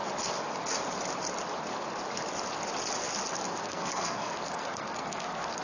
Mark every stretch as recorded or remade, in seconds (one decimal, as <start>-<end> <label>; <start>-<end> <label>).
0.0-3.6 recorded; 3.6-5.6 remade